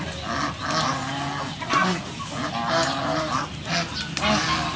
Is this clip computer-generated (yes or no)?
no